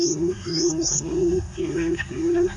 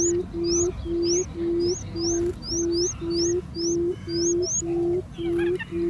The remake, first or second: first